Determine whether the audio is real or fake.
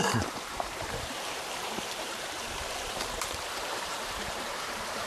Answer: fake